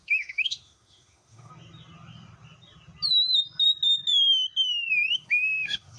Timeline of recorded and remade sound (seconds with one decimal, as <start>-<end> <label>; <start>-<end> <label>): 0.0-1.5 remade; 1.5-5.1 recorded; 5.1-6.0 remade